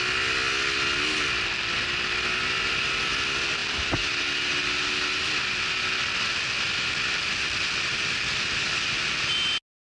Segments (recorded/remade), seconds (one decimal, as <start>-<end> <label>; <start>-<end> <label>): 0.0-9.9 recorded